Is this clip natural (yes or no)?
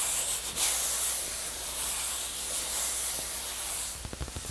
yes